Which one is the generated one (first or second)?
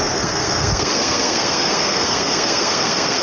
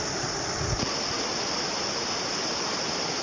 first